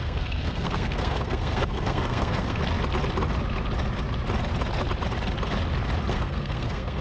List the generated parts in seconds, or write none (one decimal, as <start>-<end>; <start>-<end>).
0.0-2.6; 6.1-7.0

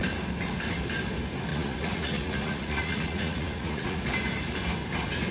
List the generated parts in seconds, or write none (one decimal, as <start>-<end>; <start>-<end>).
1.5-4.0

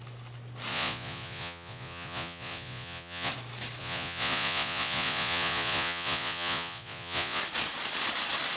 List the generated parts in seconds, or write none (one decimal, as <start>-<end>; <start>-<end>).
0.7-3.3; 3.8-7.4

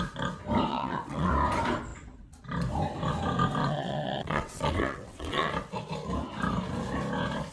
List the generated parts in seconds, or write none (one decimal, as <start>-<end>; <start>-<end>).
0.7-1.3; 3.6-5.5